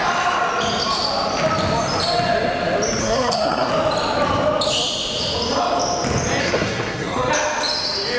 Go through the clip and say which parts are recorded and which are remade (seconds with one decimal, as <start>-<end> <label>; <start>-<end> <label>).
0.0-3.0 recorded; 3.0-3.7 remade; 3.7-6.4 recorded; 6.4-7.3 remade; 7.3-8.2 recorded